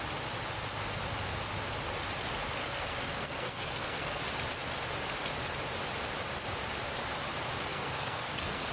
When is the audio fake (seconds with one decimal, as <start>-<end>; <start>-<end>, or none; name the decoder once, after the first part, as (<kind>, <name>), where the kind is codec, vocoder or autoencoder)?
2.6-4.2 (codec, SNAC); 7.7-8.7